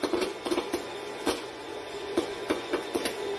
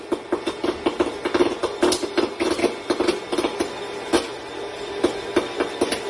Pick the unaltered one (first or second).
second